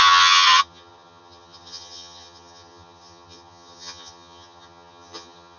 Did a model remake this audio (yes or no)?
yes